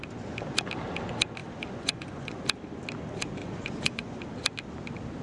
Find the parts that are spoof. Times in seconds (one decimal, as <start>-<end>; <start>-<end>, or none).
1.4-2.4; 3.4-4.2